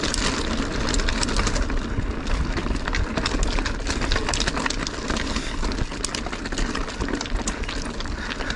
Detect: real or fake real